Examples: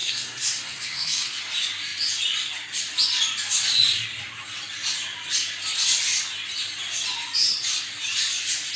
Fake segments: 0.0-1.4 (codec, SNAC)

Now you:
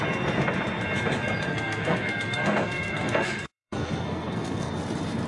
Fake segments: 1.5-4.7 (codec, SNAC)

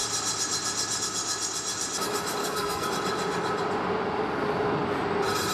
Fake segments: 2.4-2.9 (codec, SNAC)

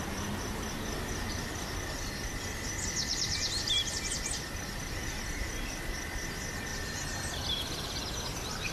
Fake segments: none

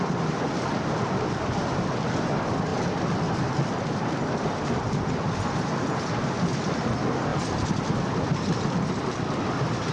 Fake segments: none

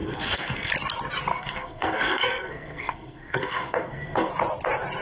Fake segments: 0.0-0.7 (codec, SNAC); 1.3-4.3

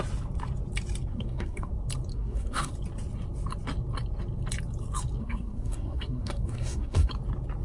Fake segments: 1.1-1.7 (codec, SNAC); 2.1-2.7; 5.2-7.1